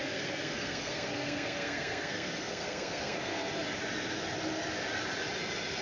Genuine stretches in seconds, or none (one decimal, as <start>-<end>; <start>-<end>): 3.5-5.8

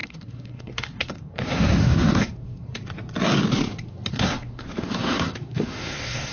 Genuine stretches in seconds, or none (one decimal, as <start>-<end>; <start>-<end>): 2.8-4.1

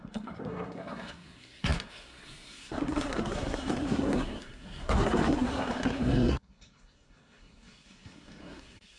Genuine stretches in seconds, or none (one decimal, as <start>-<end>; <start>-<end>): none